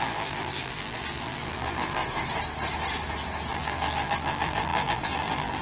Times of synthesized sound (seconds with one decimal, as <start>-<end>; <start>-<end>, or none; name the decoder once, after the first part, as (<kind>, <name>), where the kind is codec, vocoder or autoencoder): 0.0-2.0 (vocoder, BigVGAN v2); 3.5-5.6